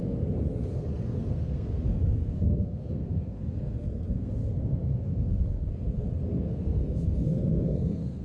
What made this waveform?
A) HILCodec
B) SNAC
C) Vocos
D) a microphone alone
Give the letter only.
B